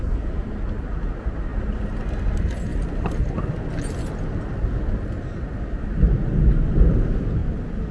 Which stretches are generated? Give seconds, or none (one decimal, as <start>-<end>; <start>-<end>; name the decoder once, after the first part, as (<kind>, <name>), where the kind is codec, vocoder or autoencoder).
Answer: none